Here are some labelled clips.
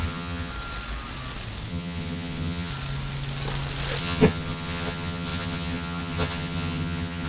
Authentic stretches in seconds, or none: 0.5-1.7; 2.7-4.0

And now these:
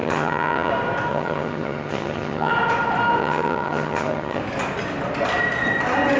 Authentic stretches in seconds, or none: 0.7-1.1; 2.5-3.2; 4.4-6.2

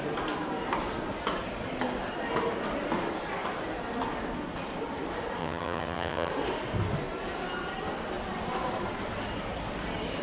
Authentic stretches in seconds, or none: 0.0-5.4; 6.3-10.2

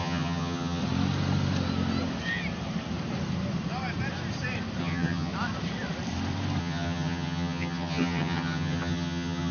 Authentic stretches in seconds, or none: 0.8-4.8; 5.3-6.6

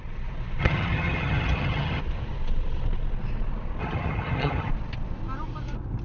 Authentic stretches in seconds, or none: 0.0-0.6; 2.0-3.8; 4.7-6.0

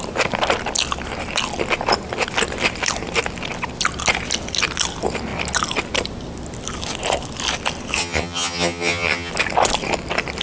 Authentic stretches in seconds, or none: 0.0-8.0; 9.3-10.4

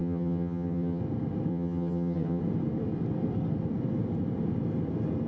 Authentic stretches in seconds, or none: 1.0-1.5; 2.4-5.3